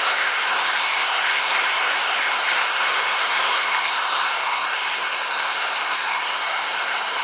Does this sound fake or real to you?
fake